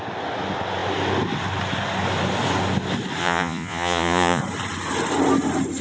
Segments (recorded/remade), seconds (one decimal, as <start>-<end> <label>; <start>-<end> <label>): 0.0-3.2 recorded; 3.2-4.4 remade; 4.4-5.8 recorded